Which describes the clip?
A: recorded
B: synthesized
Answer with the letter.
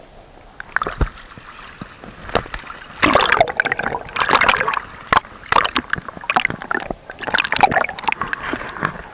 A